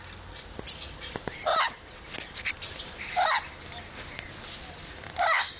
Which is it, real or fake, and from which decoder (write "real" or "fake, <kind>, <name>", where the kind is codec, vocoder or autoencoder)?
real